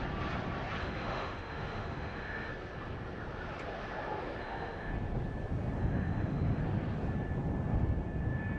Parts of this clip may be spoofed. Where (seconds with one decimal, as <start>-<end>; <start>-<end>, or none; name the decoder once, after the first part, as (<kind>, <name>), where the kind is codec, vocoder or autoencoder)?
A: 0.8-2.5 (autoencoder, DAC-VAE); 4.4-4.9; 5.8-6.6